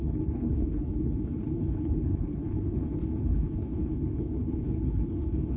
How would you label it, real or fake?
fake